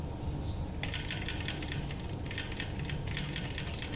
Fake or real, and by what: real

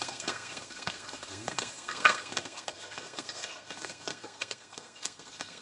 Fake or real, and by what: fake, codec, SNAC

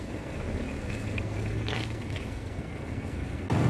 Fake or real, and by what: fake, codec, SNAC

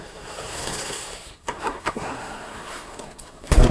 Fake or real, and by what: fake, codec, SNAC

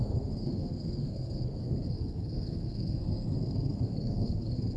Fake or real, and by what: fake, codec, SNAC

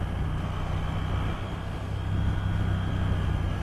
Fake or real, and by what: real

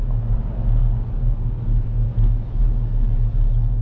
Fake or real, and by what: real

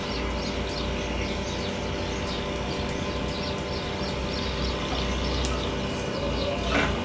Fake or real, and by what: real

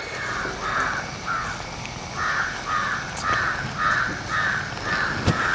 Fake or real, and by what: real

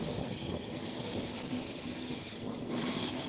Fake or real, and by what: fake, codec, SNAC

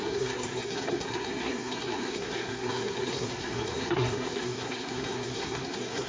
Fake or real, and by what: fake, codec, SNAC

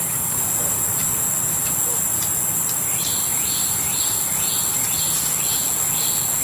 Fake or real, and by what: real